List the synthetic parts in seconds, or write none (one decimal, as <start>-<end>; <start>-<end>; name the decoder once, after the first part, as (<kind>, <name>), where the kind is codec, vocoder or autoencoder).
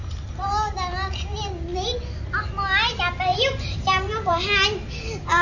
0.0-0.5 (vocoder, BigVGAN v2); 3.3-4.3